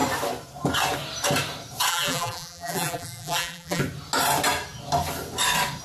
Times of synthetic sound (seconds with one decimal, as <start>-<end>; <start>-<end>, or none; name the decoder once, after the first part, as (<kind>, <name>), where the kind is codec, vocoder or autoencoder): 1.9-3.8 (vocoder, BigVGAN v2)